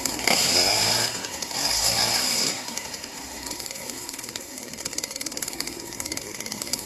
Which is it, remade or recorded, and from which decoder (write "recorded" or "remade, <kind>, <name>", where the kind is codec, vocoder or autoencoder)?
remade, codec, SNAC